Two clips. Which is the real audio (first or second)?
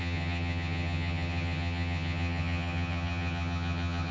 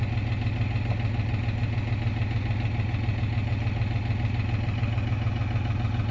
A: second